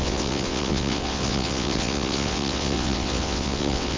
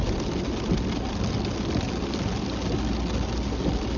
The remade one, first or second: first